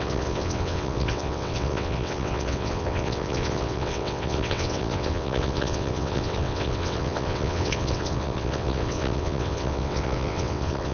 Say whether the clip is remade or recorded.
remade